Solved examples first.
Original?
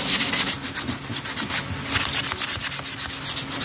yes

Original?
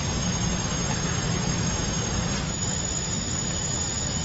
yes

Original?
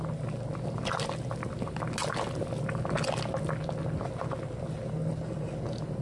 yes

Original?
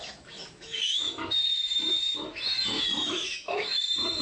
no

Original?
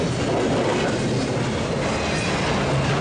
yes